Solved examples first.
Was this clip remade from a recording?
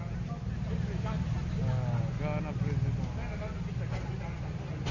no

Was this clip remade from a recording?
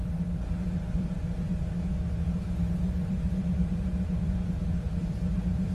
yes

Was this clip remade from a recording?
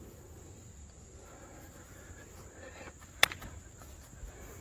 no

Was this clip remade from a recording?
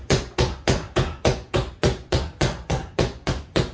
yes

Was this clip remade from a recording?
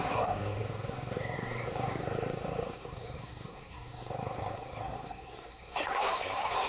yes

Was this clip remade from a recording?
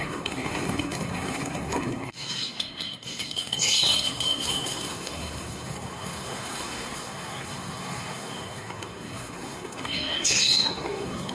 yes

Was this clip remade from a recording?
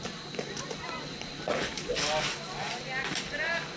no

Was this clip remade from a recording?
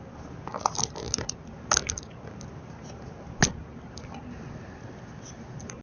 no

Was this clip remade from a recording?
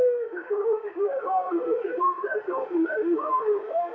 yes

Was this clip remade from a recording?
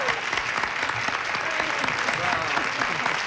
no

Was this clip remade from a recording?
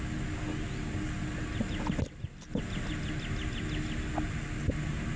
no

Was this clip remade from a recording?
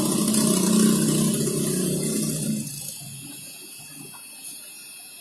no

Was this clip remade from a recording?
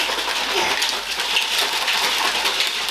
no